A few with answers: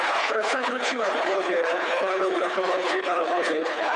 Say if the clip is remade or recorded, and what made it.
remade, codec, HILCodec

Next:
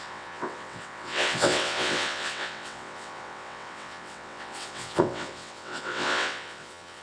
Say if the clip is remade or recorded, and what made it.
remade, vocoder, WaveNeXt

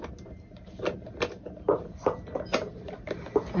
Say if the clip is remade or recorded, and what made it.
recorded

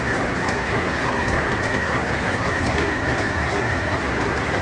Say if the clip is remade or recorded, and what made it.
remade, codec, SNAC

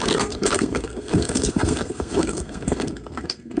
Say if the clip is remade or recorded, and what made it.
remade, codec, SNAC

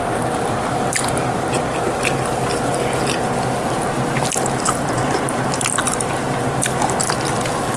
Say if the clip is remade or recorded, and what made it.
remade, vocoder, BigVGAN v2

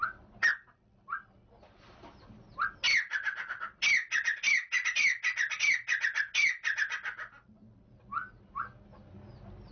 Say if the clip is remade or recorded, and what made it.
recorded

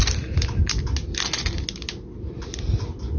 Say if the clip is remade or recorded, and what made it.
recorded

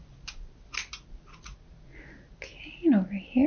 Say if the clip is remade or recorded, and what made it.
recorded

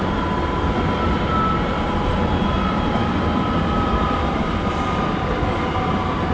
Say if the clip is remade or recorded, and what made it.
recorded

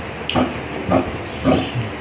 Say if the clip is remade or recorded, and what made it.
recorded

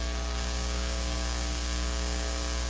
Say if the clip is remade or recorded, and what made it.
remade, codec, DAC